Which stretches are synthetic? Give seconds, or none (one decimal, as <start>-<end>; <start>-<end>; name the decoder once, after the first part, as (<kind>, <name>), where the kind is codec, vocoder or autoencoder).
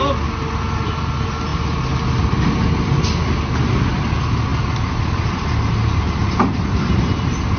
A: none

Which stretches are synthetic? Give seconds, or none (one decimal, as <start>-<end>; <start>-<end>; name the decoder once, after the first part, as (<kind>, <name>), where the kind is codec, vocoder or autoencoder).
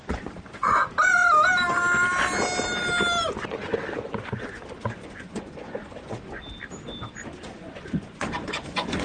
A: 0.0-0.8 (vocoder, Vocos); 4.0-6.4; 7.4-9.0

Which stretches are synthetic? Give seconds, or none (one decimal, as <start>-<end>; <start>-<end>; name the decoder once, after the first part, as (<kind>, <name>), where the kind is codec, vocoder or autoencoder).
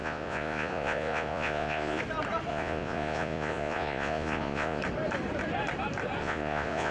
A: 0.0-2.0 (vocoder, Vocos); 2.5-4.8; 6.2-6.9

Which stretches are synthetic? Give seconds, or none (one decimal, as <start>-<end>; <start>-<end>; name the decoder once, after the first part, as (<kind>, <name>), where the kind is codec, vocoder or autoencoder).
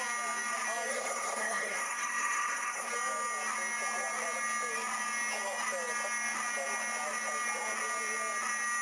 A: 0.9-2.9 (codec, SNAC)